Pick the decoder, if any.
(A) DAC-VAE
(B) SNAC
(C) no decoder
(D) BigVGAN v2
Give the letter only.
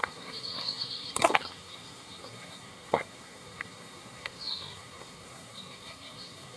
B